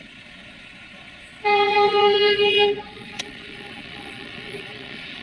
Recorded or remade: remade